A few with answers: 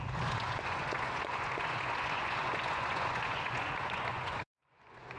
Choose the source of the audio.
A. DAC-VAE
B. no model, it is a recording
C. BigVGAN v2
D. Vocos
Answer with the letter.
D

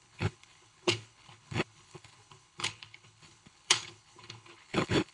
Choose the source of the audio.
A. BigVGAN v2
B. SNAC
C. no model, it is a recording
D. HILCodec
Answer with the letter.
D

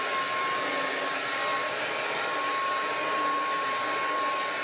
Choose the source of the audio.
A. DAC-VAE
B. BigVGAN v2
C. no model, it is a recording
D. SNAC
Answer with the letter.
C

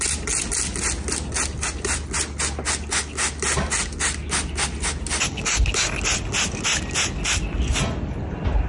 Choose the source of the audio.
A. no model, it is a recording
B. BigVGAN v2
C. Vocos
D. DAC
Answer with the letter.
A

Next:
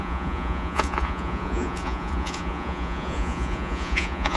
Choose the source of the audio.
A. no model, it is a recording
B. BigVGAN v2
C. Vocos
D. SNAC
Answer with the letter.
C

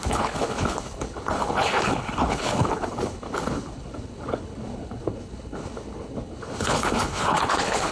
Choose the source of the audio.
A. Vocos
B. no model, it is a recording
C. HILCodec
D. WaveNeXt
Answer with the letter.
C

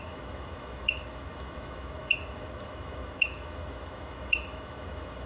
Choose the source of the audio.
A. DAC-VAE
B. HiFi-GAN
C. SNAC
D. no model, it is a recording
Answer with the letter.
A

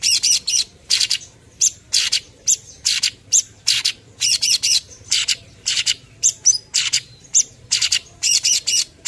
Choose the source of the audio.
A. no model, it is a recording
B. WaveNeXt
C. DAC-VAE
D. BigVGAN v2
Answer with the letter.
D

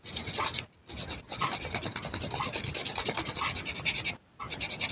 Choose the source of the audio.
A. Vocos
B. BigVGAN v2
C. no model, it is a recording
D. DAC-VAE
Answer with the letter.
C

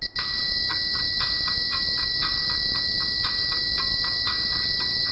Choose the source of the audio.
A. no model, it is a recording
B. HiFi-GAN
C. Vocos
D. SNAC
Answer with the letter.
A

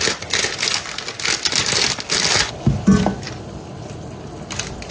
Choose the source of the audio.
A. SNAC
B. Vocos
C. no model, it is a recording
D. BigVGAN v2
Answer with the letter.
C